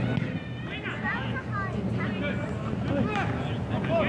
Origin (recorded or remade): recorded